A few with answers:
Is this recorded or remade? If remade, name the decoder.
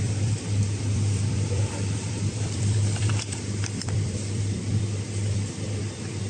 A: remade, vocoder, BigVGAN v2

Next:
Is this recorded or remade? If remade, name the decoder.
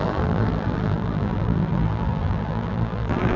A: remade, vocoder, BigVGAN v2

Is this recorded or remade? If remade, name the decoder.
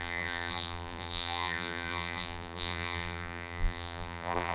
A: remade, vocoder, BigVGAN v2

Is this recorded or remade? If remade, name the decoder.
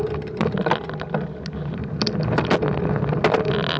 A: recorded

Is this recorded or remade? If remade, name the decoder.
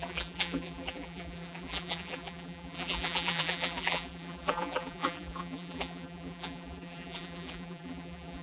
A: remade, vocoder, BigVGAN v2